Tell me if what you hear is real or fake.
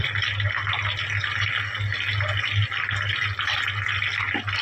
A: real